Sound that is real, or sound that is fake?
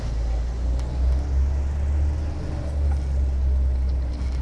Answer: real